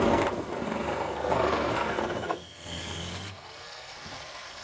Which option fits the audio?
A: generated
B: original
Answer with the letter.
A